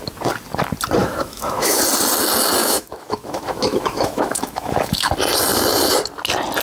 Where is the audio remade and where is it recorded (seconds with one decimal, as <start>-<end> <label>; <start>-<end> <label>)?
0.0-1.0 recorded; 1.0-1.8 remade; 1.8-2.6 recorded; 2.6-5.1 remade; 5.1-6.6 recorded